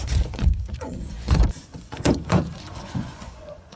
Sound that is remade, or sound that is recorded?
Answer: remade